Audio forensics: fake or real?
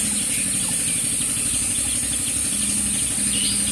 real